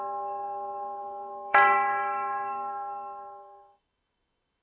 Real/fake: fake